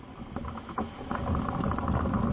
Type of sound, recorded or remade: recorded